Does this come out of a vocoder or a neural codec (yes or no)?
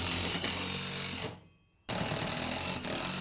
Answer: no